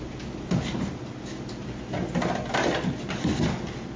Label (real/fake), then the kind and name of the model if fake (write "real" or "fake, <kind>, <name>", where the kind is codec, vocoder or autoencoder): real